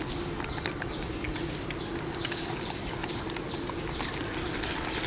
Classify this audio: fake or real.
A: real